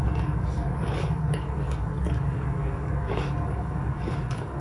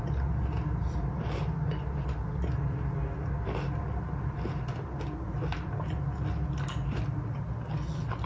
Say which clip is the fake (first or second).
first